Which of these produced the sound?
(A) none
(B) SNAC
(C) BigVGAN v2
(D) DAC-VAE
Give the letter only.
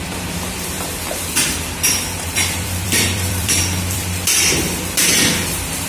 C